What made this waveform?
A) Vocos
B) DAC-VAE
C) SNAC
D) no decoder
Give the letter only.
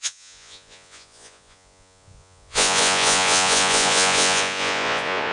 A